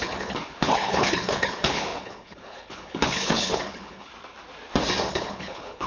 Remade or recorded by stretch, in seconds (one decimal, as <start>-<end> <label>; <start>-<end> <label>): 0.0-4.1 remade; 4.1-5.1 recorded; 5.1-5.9 remade